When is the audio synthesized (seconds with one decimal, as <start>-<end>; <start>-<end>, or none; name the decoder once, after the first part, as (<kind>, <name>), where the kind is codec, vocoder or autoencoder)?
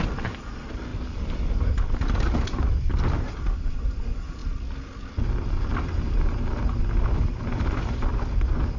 none